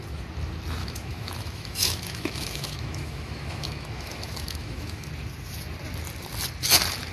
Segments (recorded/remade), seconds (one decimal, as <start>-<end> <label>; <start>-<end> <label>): 0.0-0.8 recorded; 0.8-5.1 remade; 5.1-7.1 recorded